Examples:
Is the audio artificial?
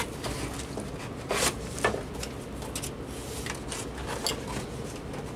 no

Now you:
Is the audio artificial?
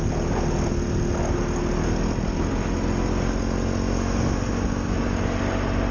no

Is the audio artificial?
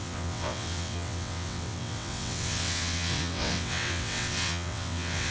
yes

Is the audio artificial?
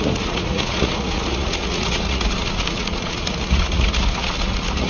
yes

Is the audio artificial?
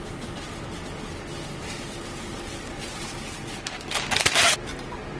no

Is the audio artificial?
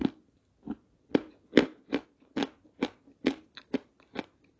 no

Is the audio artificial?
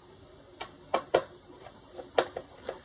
no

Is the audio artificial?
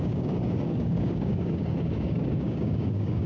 yes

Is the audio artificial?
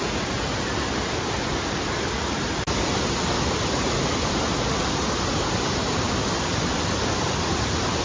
no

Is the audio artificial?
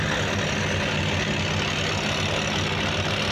no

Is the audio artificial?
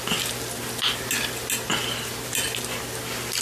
no